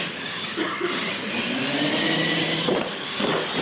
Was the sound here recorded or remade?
recorded